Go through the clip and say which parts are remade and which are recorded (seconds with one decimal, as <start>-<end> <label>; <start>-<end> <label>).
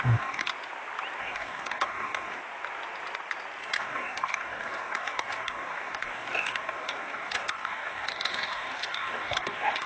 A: 0.0-0.5 remade; 0.5-1.2 recorded; 1.2-2.4 remade; 2.4-3.6 recorded; 3.6-9.9 remade